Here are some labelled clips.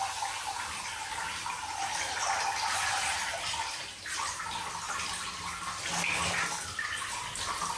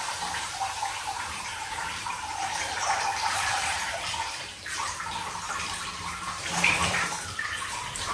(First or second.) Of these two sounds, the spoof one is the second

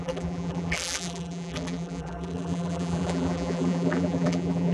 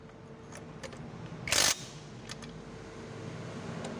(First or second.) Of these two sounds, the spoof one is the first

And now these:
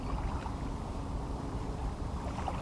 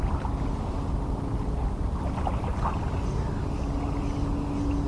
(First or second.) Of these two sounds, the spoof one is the first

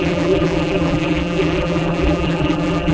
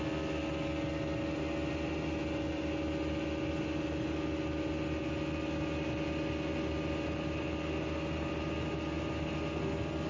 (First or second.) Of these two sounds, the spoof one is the first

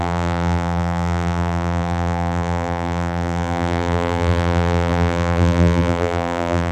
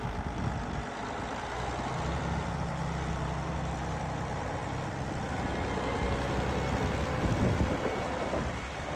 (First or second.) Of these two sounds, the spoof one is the first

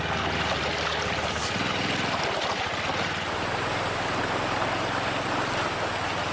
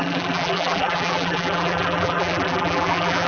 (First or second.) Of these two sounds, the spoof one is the second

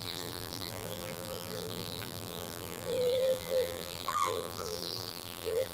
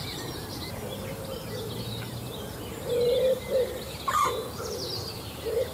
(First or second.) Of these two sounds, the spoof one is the first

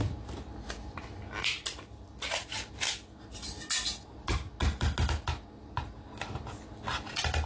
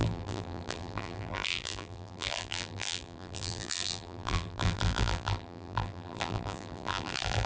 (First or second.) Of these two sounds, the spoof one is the second